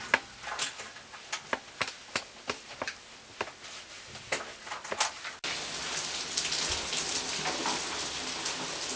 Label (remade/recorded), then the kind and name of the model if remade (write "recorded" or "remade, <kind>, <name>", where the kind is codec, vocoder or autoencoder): recorded